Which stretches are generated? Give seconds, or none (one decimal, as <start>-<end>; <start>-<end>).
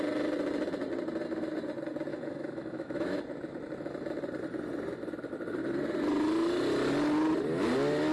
2.1-3.2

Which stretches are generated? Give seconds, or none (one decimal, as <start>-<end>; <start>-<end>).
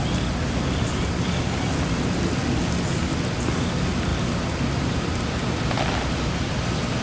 none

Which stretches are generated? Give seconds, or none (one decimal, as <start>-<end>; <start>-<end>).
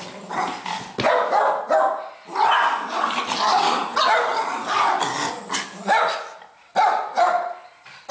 none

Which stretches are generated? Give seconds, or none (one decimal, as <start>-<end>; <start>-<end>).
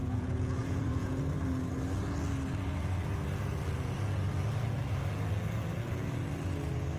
0.0-1.2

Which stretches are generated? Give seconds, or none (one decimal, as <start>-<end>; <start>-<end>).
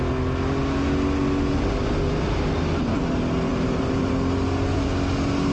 3.5-4.1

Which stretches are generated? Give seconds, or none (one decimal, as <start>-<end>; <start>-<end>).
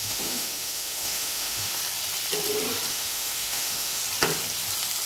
0.0-1.8; 2.9-4.0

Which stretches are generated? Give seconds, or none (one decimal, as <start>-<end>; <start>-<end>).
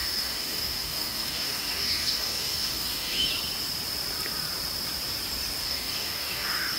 0.0-3.3; 5.6-6.8